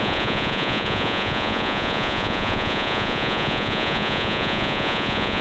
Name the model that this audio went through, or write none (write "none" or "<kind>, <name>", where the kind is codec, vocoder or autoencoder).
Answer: vocoder, Vocos